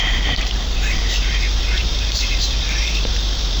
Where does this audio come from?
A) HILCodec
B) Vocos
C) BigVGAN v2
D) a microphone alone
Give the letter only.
C